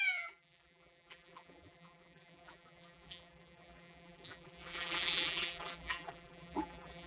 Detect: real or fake fake